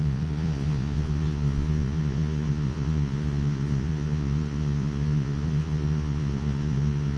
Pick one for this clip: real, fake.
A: fake